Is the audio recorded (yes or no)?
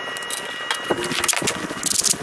yes